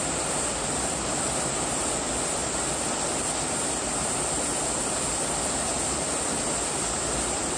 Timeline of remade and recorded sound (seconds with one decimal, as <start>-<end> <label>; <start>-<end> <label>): 0.0-7.6 recorded

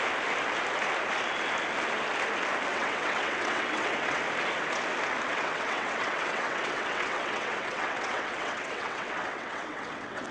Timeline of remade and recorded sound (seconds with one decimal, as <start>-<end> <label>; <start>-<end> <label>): 0.0-2.7 recorded; 2.7-4.2 remade; 4.2-5.3 recorded; 5.3-10.3 remade

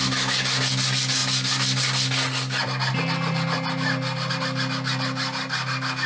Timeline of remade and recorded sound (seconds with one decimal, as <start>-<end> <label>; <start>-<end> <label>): 0.0-6.1 recorded